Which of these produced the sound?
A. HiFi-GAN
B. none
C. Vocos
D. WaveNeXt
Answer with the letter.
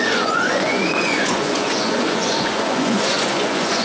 C